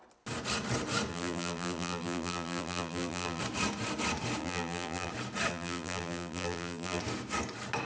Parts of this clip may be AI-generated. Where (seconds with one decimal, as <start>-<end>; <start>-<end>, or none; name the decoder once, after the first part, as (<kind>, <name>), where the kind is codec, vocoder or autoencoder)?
1.1-3.4 (vocoder, BigVGAN v2); 4.4-5.1; 5.5-7.0